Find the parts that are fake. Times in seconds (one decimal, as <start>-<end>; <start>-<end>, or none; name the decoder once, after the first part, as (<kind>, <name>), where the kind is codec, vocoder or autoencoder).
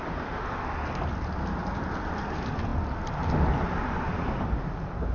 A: none